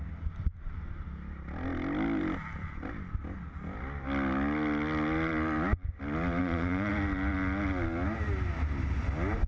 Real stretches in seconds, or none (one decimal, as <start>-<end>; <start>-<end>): 0.0-6.4; 6.9-9.5